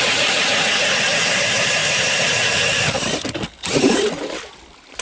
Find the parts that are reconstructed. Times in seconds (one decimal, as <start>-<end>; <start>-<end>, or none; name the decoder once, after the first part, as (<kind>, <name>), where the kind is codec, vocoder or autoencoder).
0.0-1.8 (vocoder, BigVGAN v2)